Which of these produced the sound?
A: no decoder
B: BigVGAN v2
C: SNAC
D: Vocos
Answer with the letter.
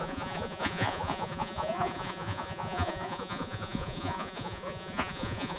D